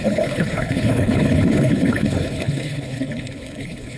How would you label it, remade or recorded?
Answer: remade